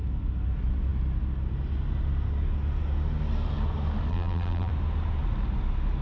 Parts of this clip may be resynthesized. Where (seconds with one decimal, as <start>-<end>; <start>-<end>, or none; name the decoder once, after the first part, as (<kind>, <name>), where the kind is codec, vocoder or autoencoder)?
4.1-4.7 (vocoder, BigVGAN v2)